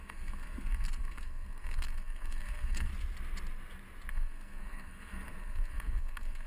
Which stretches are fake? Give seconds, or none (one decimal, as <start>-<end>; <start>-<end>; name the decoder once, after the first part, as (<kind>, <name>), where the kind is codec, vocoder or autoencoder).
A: 0.0-2.9 (codec, SNAC); 4.1-6.5